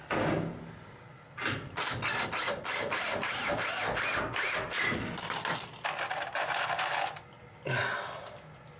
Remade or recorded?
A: recorded